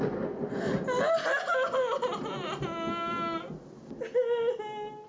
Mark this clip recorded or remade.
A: recorded